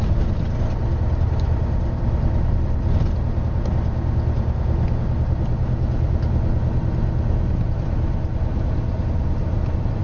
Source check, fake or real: real